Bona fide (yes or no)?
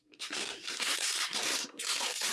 no